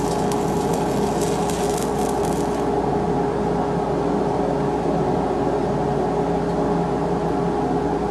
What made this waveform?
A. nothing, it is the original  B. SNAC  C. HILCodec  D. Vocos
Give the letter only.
A